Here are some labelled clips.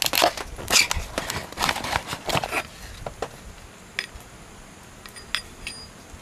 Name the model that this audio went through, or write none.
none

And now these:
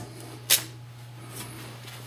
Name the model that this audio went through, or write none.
none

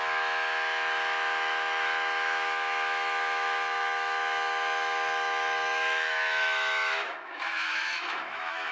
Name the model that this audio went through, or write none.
autoencoder, DAC-VAE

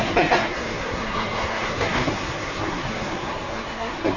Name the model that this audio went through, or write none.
codec, SNAC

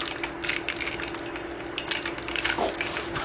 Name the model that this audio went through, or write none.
none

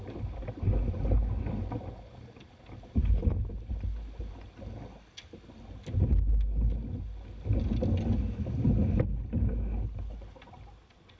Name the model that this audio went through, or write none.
none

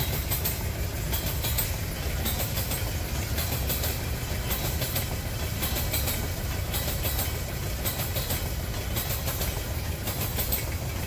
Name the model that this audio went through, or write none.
none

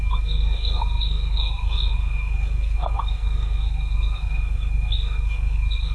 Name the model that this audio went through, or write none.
codec, SNAC